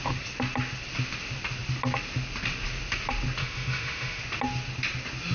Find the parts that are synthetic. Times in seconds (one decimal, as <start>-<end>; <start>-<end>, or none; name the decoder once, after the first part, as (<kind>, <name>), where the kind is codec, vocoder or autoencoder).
3.4-4.2 (autoencoder, DAC-VAE)